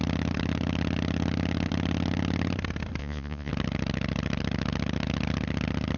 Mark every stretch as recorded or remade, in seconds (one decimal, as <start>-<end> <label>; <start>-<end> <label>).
0.0-3.0 recorded; 3.0-3.5 remade; 3.5-6.0 recorded